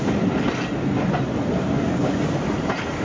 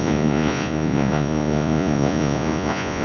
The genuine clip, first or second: first